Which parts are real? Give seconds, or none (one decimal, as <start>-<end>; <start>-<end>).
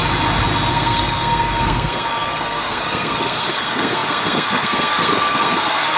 0.0-0.7